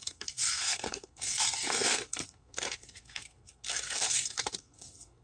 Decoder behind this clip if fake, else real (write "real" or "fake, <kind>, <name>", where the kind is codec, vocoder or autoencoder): fake, codec, SNAC